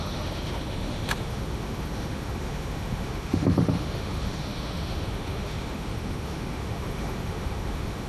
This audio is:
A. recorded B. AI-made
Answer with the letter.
B